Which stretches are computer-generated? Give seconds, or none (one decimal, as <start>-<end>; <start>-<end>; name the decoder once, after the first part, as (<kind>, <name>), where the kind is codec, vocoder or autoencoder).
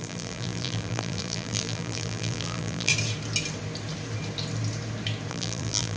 0.0-2.9 (vocoder, BigVGAN v2); 5.3-6.0